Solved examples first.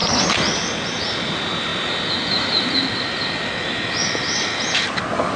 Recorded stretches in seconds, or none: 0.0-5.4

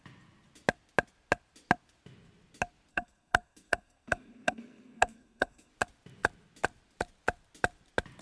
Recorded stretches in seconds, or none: 0.0-2.9; 5.7-8.2

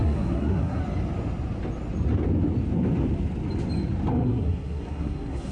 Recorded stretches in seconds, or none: 0.8-4.1

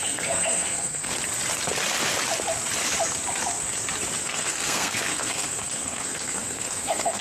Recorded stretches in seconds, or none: 1.1-4.2

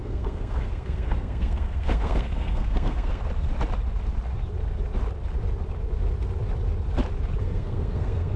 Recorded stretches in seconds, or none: 3.2-7.4

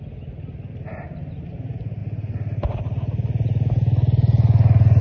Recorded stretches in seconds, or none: 0.0-5.0

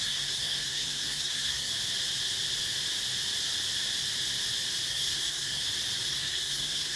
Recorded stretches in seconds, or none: 1.7-4.9; 5.6-6.1